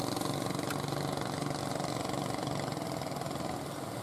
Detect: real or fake real